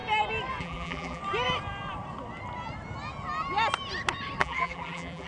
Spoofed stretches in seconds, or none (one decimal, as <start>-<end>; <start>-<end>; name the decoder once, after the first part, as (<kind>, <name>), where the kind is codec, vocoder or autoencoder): 0.6-1.2 (vocoder, BigVGAN v2); 4.4-5.3